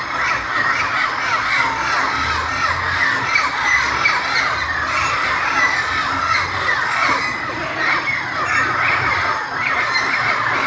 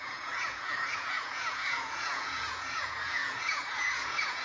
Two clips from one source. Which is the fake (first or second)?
second